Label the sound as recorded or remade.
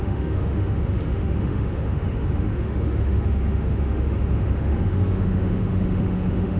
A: remade